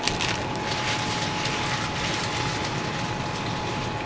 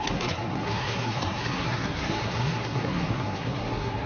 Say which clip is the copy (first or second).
second